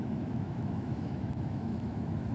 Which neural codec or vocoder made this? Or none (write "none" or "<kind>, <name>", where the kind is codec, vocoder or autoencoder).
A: autoencoder, DAC-VAE